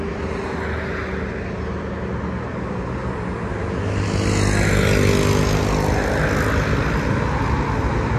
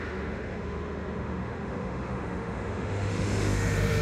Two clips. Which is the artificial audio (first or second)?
second